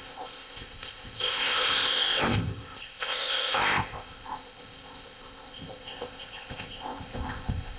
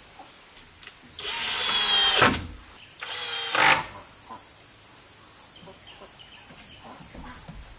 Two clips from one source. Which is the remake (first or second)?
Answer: first